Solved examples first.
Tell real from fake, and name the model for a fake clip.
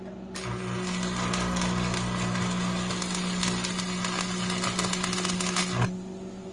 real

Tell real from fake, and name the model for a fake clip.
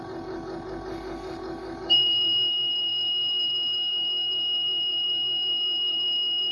fake, codec, DAC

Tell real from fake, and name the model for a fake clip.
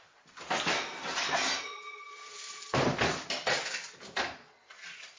real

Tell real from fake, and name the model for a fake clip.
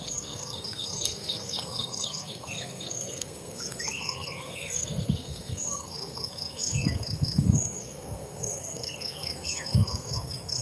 fake, codec, SNAC